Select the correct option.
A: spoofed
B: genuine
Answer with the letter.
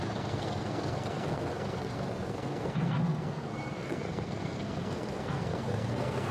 A